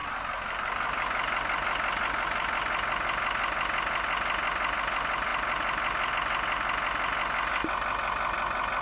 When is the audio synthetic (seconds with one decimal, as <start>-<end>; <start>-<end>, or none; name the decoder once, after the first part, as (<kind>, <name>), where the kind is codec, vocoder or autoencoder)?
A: none